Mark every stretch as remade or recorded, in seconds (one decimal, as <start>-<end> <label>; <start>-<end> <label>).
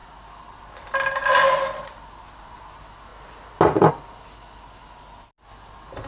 0.0-6.1 recorded